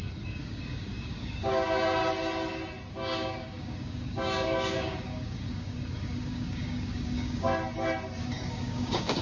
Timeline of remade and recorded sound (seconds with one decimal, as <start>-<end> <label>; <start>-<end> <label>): 0.0-2.0 remade; 2.0-2.9 recorded; 2.9-7.5 remade; 7.5-8.2 recorded; 8.2-9.2 remade